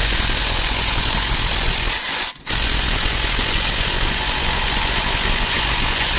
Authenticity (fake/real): fake